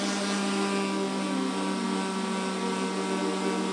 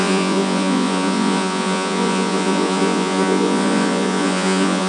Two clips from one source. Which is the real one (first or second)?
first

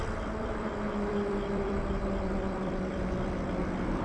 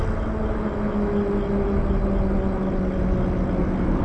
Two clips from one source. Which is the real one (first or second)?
second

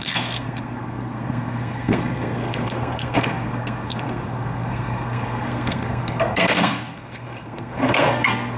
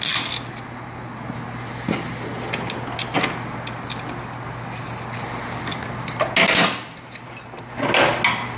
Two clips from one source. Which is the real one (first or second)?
second